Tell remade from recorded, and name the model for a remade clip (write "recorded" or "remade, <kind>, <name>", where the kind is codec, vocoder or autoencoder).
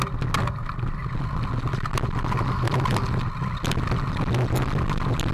recorded